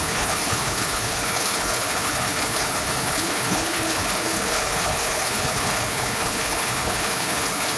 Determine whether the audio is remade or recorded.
remade